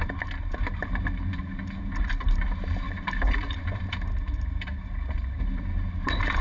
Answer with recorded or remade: remade